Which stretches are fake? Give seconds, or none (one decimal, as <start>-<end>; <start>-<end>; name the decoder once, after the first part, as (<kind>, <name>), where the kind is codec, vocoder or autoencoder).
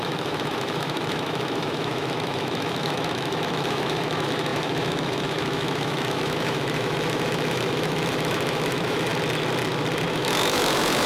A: 0.0-9.1 (autoencoder, DAC-VAE); 10.1-11.1